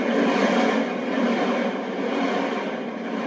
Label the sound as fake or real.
real